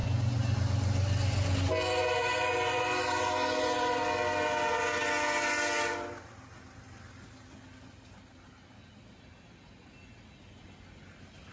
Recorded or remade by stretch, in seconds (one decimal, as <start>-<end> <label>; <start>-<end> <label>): 0.0-11.5 recorded